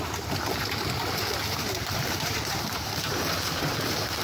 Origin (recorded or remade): remade